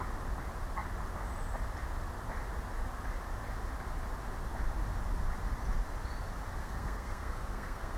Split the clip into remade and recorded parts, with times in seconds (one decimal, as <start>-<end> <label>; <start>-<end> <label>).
0.0-6.6 recorded; 6.6-8.0 remade